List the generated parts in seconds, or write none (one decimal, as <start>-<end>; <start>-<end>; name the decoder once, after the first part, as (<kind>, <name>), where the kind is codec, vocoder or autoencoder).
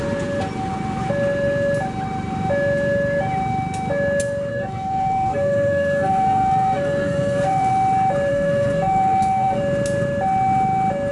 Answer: 4.5-7.7 (codec, SNAC); 8.3-9.6